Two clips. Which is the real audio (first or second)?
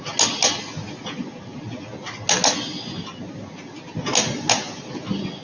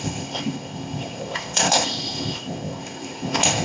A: first